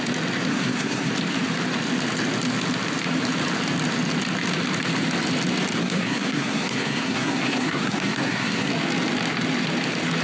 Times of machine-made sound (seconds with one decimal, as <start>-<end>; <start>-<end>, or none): 0.5-1.1; 5.8-8.7